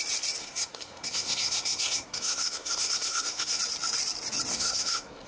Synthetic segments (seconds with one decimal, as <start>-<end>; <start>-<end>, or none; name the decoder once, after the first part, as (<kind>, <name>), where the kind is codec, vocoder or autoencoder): 0.4-3.6 (codec, SNAC); 4.5-5.3